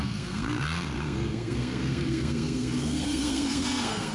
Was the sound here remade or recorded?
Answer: remade